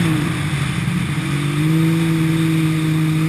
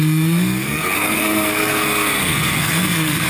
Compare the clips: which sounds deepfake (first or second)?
second